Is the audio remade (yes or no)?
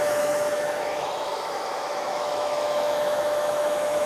yes